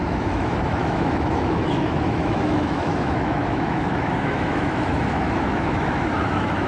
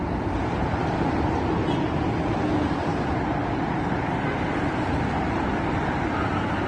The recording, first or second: second